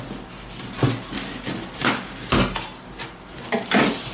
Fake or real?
real